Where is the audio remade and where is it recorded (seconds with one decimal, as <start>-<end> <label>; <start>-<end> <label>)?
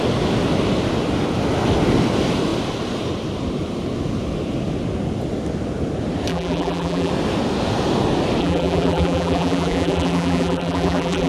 0.0-6.3 recorded; 6.3-7.1 remade; 7.1-8.4 recorded; 8.4-11.3 remade